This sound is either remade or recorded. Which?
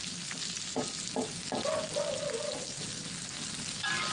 recorded